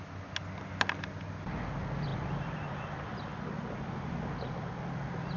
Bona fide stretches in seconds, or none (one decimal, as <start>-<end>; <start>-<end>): 0.0-5.4